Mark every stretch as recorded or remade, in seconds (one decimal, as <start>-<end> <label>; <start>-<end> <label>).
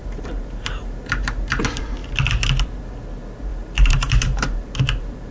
0.0-1.6 remade; 1.6-3.5 recorded; 3.5-4.7 remade; 4.7-5.3 recorded